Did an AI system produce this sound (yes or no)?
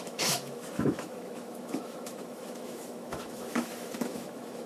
yes